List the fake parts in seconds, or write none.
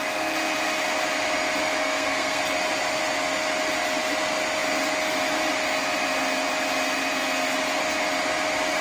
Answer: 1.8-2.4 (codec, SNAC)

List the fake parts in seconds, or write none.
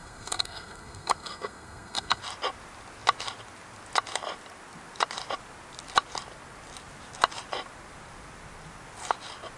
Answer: 0.0-2.2 (codec, SNAC)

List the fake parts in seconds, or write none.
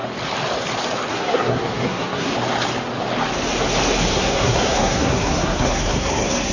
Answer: 1.1-2.3 (codec, SNAC); 4.1-6.5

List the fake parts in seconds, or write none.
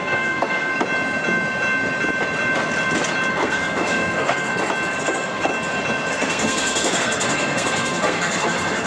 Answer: 0.0-0.7 (codec, SNAC); 3.3-4.5; 5.0-5.5; 6.1-8.9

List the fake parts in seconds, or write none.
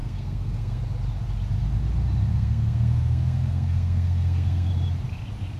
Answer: 0.0-0.8 (codec, SNAC); 2.3-4.7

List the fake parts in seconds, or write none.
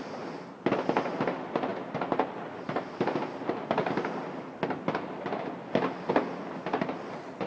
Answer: none